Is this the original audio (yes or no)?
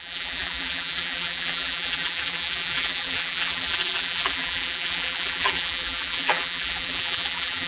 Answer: no